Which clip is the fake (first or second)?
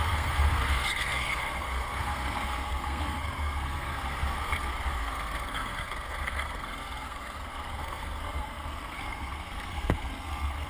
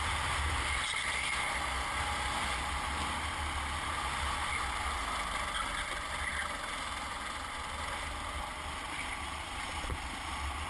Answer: first